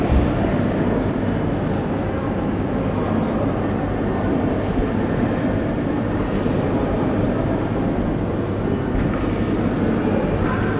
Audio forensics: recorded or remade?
recorded